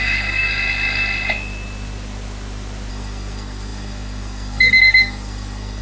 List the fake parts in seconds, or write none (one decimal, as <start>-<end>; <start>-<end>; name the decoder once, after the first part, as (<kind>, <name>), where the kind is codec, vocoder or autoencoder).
0.0-0.5 (codec, SNAC); 2.9-5.8